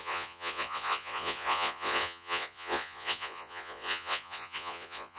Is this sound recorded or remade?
remade